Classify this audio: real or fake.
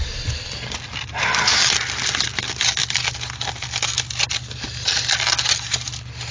real